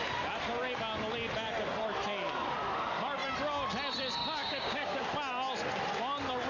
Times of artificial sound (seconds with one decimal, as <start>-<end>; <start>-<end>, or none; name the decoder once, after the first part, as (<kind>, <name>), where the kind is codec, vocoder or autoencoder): 4.4-5.0 (codec, DAC)